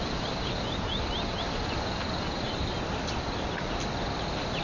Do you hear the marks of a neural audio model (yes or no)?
no